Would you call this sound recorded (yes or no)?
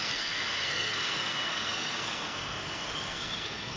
no